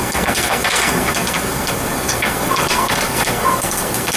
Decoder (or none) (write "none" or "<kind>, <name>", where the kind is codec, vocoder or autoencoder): codec, SNAC